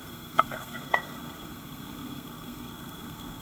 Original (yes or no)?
no